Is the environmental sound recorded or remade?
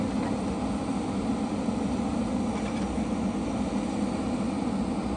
recorded